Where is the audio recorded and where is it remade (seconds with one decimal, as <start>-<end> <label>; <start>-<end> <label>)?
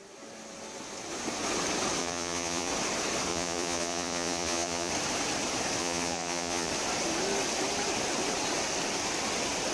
0.0-2.0 recorded; 2.0-2.7 remade; 2.7-3.3 recorded; 3.3-4.9 remade; 4.9-5.8 recorded; 5.8-6.7 remade; 6.7-9.7 recorded